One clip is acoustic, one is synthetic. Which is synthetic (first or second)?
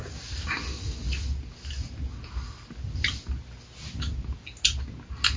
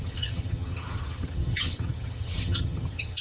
second